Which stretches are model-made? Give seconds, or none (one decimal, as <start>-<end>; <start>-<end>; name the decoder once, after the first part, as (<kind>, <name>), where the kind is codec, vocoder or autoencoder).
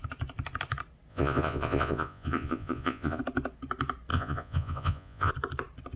1.1-3.2 (vocoder, Vocos); 4.1-5.3